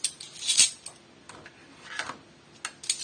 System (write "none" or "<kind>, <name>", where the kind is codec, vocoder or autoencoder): none